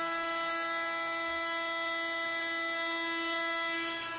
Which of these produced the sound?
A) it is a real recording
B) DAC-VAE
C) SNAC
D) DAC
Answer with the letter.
A